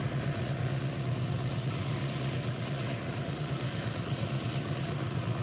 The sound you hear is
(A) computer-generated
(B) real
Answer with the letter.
A